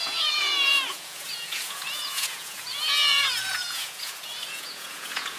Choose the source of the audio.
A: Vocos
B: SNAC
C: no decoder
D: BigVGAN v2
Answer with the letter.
A